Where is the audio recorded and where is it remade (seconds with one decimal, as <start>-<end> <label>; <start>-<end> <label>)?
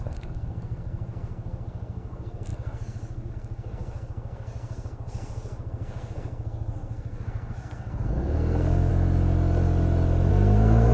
0.0-8.9 remade; 8.9-10.3 recorded; 10.3-10.9 remade